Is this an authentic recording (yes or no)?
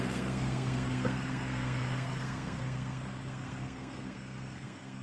no